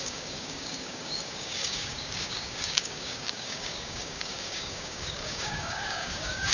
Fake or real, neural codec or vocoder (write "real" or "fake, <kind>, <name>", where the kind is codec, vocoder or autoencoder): fake, codec, DAC